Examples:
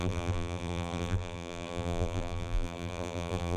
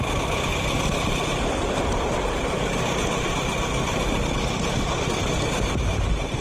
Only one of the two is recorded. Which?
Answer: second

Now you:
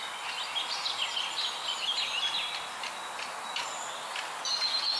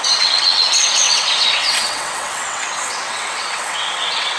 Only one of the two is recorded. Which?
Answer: first